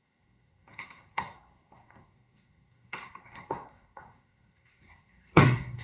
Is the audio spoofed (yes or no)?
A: yes